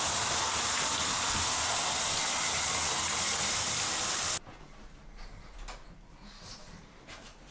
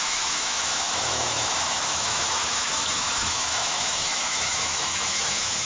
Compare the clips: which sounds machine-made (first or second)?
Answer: second